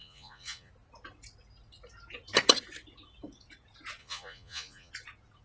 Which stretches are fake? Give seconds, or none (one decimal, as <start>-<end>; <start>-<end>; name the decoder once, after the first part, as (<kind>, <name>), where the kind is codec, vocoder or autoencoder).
0.0-0.7 (vocoder, Vocos); 4.0-4.9